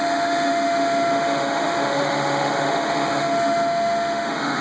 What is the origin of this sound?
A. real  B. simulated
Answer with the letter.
B